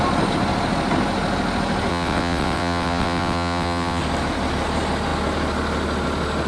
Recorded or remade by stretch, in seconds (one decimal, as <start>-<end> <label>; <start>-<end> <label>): 0.0-1.9 recorded; 1.9-4.0 remade; 4.0-6.5 recorded